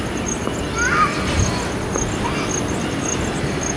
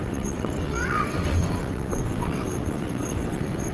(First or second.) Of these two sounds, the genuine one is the first